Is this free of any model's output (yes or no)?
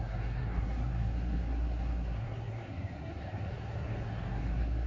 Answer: no